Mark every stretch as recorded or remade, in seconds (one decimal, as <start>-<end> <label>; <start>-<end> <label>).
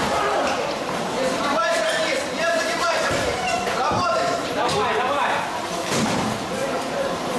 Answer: 0.0-7.4 remade